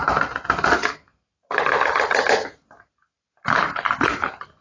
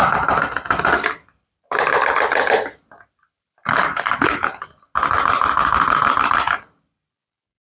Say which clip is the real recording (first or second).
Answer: first